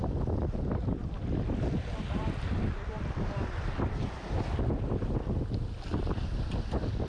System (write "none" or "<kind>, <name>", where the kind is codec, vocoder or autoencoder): none